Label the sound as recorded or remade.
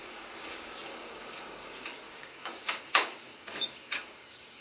remade